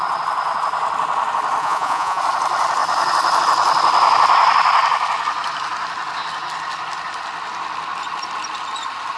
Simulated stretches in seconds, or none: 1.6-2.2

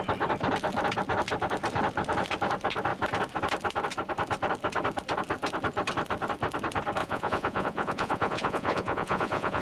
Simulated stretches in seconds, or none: 7.0-9.6

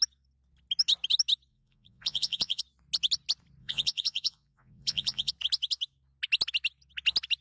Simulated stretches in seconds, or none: 1.5-2.6; 3.6-5.3

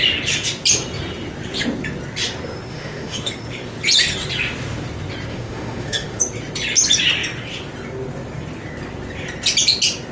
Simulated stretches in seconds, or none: 2.7-3.3; 5.3-6.2

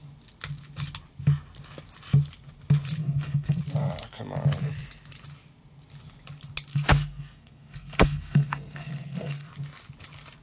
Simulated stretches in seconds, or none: 3.0-3.6; 6.7-9.5

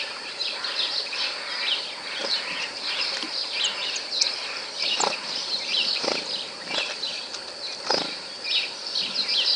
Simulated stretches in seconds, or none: 2.2-7.2

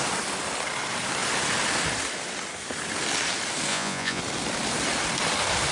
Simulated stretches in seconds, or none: 3.7-4.2